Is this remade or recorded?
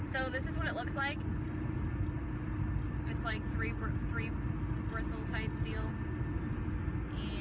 recorded